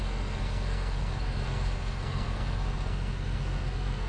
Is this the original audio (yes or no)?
no